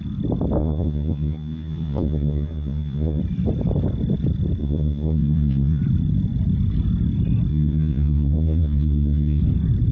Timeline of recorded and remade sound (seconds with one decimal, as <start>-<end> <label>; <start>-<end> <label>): 0.0-0.6 recorded; 0.6-3.2 remade; 3.2-4.6 recorded; 4.6-5.8 remade; 5.8-7.5 recorded; 7.5-9.4 remade; 9.4-9.9 recorded